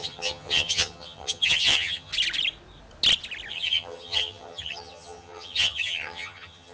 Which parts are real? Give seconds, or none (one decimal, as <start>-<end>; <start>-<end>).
2.1-3.5